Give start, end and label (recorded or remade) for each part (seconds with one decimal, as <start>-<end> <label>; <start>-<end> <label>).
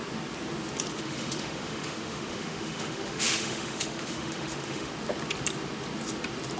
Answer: 0.0-0.9 recorded; 0.9-4.9 remade; 4.9-6.6 recorded